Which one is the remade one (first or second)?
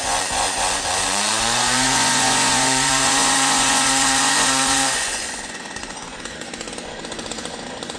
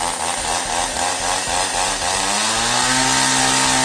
first